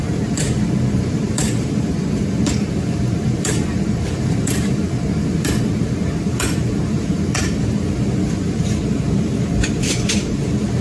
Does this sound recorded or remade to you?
remade